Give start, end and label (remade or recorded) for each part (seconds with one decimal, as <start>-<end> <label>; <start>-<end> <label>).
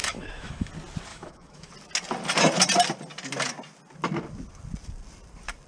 0.0-0.7 remade; 0.7-1.1 recorded; 1.1-1.7 remade; 1.7-5.7 recorded